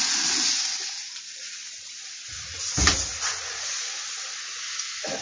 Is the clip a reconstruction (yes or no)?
no